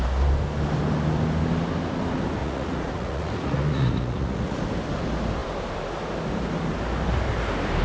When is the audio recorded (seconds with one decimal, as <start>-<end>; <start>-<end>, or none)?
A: 0.0-2.4; 4.6-7.8